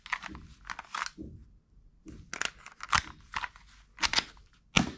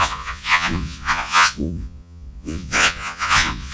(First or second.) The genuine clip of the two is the first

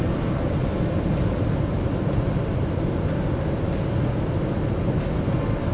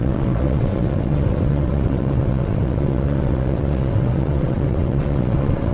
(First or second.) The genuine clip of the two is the first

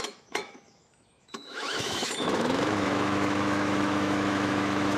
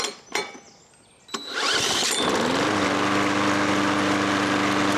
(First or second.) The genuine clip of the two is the second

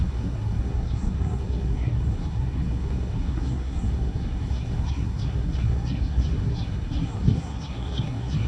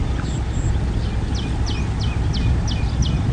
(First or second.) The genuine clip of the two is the second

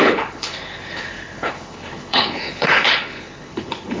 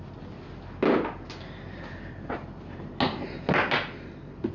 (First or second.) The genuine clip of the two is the second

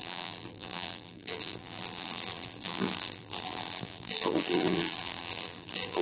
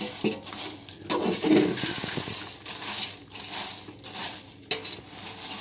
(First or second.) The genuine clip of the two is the second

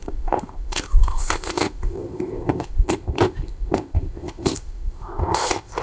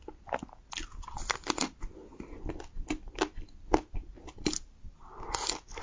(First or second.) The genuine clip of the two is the second